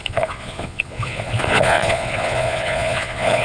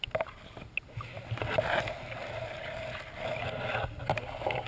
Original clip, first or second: second